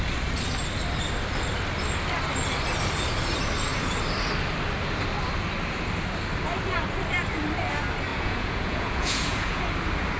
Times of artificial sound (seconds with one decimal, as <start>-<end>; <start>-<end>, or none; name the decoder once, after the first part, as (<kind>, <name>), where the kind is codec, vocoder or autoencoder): 8.1-9.6 (vocoder, Vocos)